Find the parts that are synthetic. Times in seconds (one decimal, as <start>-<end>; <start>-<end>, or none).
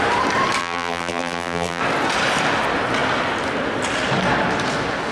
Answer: 0.6-1.8